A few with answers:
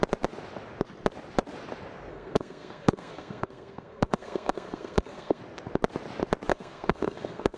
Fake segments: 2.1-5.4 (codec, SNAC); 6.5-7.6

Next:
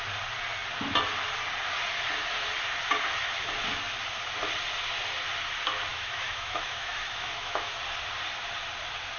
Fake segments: 5.9-7.7 (autoencoder, DAC-VAE)

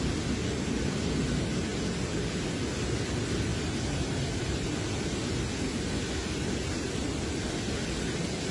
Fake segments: 3.5-4.7 (vocoder, BigVGAN v2); 6.2-7.2